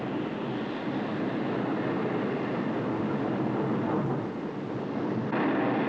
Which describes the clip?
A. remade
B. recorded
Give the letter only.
B